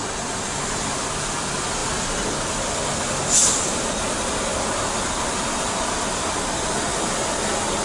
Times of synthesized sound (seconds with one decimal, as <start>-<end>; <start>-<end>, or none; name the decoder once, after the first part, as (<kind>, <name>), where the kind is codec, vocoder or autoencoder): none